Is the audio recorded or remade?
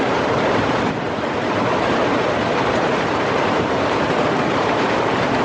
remade